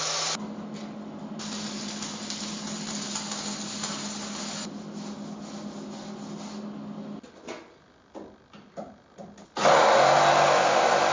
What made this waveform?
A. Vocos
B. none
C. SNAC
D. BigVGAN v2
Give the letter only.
B